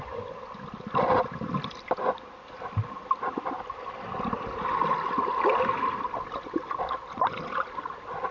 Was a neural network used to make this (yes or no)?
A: no